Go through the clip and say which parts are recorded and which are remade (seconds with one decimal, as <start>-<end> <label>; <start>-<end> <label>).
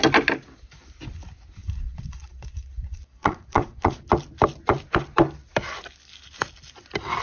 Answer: 0.0-1.6 recorded; 1.6-4.0 remade; 4.0-7.2 recorded